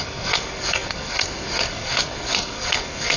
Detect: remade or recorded remade